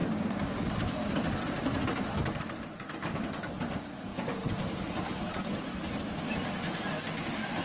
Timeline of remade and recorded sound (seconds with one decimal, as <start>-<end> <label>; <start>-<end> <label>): 0.0-7.6 recorded